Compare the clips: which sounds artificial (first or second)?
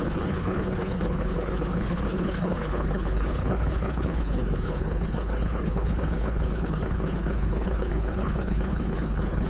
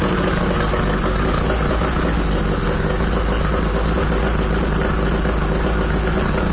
first